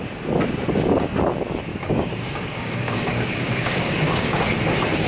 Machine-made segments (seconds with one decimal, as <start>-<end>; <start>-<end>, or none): 1.7-4.4